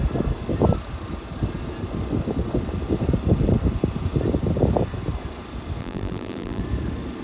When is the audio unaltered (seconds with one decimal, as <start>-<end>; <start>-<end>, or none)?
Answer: 0.0-5.8; 6.6-7.2